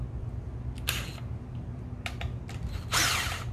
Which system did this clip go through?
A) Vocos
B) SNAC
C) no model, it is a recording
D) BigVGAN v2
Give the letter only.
C